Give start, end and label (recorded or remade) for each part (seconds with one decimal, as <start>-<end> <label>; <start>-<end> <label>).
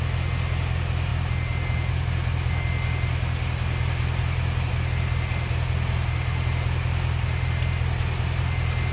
0.0-8.9 recorded